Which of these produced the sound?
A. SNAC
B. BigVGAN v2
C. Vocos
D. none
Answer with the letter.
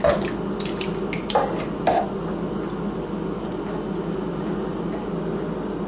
D